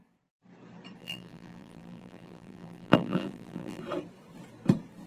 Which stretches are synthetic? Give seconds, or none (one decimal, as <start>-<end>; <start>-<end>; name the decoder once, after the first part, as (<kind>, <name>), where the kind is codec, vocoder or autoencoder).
1.0-3.8 (vocoder, BigVGAN v2)